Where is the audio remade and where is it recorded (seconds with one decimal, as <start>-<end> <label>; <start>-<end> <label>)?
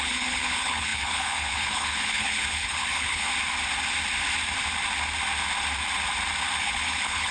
0.0-3.3 remade; 3.3-6.6 recorded; 6.6-7.3 remade